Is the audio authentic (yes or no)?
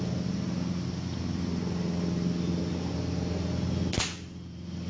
yes